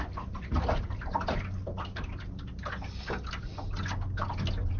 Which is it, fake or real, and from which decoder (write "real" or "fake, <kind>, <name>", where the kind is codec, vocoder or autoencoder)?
real